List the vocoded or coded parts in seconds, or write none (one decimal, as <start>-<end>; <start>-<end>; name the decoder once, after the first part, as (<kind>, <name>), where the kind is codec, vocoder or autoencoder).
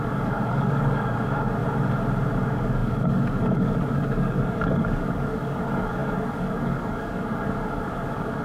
0.0-1.6 (codec, DAC); 2.4-8.4